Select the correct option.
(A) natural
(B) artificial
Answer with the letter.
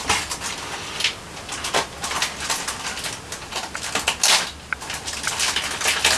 A